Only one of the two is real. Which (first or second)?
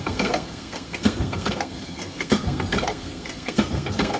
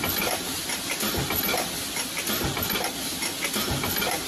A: second